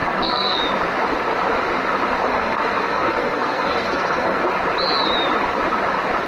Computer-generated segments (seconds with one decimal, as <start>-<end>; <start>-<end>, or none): 0.0-0.6; 2.3-4.4